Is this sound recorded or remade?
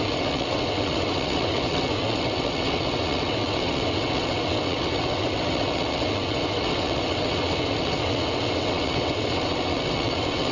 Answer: remade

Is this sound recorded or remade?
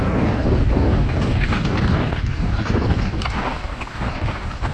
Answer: remade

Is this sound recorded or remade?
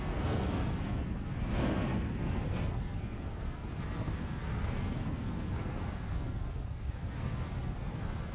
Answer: remade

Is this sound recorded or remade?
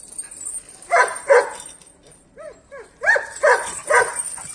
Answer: recorded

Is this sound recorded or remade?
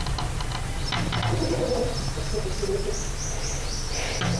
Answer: recorded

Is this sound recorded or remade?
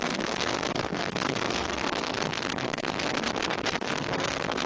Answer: remade